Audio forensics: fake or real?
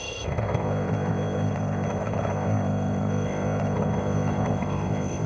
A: fake